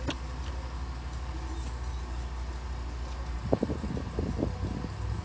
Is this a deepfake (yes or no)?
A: no